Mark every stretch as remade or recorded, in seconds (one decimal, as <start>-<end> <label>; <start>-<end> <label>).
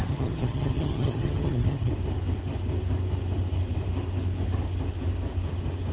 0.0-1.9 remade; 1.9-5.9 recorded